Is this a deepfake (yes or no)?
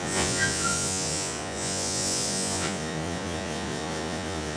yes